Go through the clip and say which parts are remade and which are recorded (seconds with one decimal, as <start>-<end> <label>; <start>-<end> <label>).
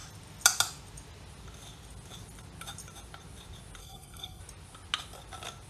0.0-3.8 recorded; 3.8-4.4 remade; 4.4-5.7 recorded